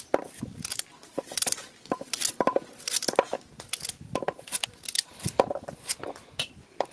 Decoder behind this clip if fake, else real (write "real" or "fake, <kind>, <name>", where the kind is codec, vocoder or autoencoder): real